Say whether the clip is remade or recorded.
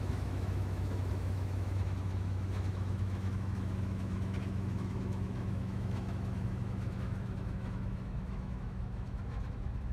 remade